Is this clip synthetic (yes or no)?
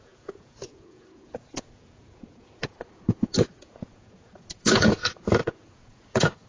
yes